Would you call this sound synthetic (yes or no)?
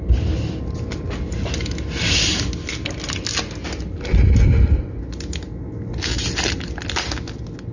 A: no